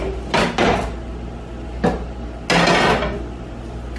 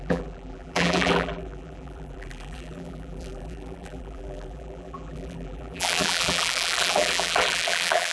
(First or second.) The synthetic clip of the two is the second